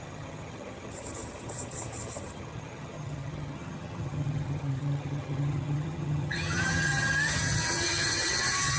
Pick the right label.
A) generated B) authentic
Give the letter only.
A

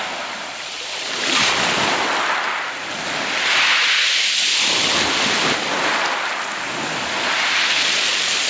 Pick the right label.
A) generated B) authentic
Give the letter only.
B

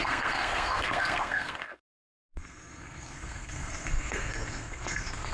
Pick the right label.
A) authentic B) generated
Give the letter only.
B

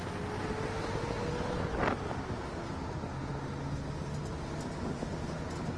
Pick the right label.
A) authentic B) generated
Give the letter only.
A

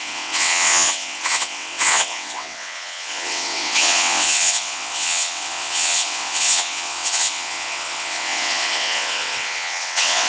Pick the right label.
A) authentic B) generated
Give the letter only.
B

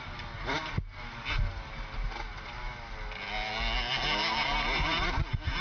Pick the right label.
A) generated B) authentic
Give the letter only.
B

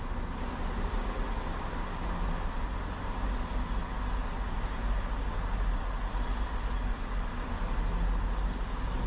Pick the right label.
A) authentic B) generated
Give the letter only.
A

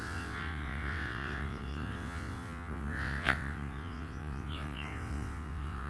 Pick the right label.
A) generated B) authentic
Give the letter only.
A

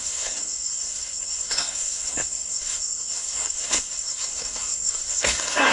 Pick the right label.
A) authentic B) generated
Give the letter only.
B